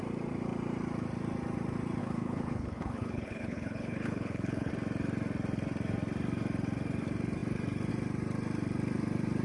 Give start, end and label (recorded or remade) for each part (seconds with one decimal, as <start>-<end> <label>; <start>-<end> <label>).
0.0-2.0 recorded; 2.0-4.7 remade; 4.7-9.4 recorded